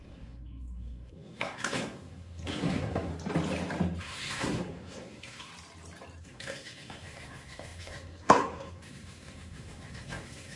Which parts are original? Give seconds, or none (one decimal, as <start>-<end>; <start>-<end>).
3.1-4.0; 5.5-6.2